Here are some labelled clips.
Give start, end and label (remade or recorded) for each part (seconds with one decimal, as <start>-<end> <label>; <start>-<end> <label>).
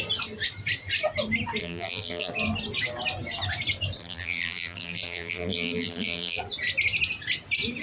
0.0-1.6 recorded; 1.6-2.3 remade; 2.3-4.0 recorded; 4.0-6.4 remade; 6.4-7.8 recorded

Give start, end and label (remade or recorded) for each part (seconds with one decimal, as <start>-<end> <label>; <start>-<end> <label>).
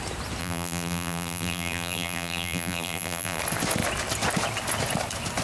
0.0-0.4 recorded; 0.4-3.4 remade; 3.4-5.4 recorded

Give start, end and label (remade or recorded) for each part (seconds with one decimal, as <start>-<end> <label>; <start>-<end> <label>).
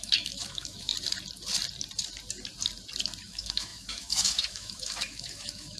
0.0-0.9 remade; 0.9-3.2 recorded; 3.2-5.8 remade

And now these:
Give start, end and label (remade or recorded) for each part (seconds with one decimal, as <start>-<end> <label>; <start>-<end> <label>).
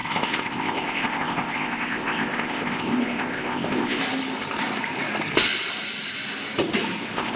0.0-4.0 remade; 4.0-7.0 recorded; 7.0-7.4 remade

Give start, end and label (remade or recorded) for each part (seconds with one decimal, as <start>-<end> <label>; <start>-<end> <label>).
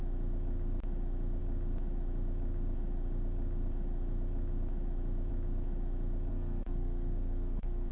0.0-6.3 recorded; 6.3-7.9 remade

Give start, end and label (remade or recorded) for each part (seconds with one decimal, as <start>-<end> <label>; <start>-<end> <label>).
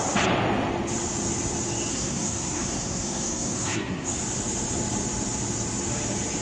0.0-1.9 recorded; 1.9-4.2 remade; 4.2-6.4 recorded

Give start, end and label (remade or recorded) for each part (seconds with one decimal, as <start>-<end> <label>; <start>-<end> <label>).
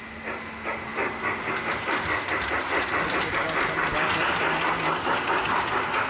0.0-6.1 recorded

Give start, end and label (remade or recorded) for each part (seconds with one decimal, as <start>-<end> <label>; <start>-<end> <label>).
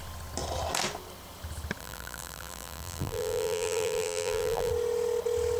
0.0-1.8 recorded; 1.8-4.7 remade; 4.7-5.6 recorded